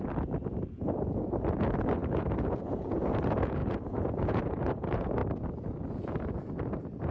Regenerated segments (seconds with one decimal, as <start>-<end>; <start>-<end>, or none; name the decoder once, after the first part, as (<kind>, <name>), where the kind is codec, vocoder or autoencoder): 0.0-5.2 (vocoder, Vocos); 5.9-7.1